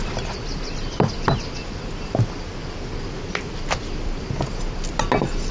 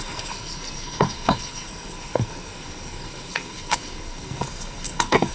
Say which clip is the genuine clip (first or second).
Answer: first